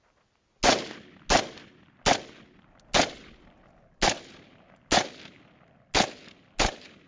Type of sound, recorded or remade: recorded